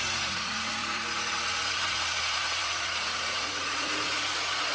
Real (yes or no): no